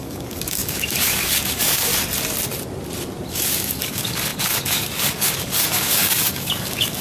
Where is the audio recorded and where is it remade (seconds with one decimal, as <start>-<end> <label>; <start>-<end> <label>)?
0.0-1.9 remade; 1.9-3.3 recorded; 3.3-7.0 remade